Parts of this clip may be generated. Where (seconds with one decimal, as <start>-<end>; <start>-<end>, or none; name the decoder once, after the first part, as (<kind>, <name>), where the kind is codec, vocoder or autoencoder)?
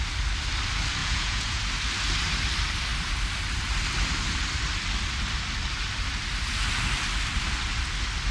1.0-1.6 (vocoder, Vocos)